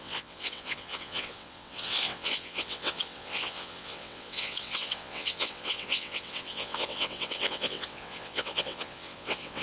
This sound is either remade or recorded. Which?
remade